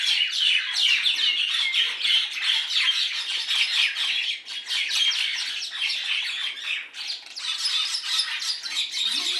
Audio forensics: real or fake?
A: real